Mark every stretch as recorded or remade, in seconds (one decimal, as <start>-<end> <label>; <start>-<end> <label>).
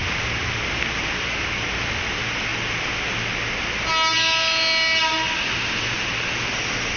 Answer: 0.0-7.0 recorded